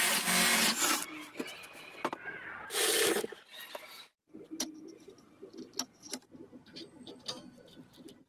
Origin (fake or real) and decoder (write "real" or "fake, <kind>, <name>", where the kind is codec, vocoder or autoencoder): real